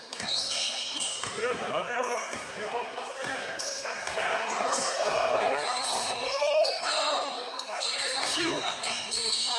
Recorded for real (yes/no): no